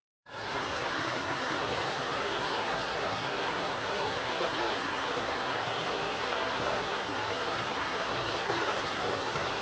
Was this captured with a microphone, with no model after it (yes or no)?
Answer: no